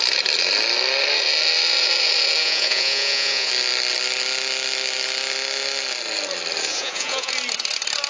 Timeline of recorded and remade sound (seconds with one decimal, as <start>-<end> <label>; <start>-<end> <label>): 0.0-2.4 recorded; 2.4-3.5 remade; 3.5-6.7 recorded; 6.7-7.3 remade; 7.3-8.1 recorded